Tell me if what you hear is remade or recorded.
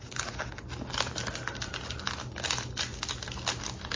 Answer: recorded